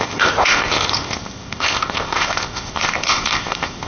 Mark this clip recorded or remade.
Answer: remade